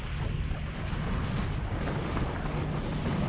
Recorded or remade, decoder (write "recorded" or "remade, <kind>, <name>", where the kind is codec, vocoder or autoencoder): recorded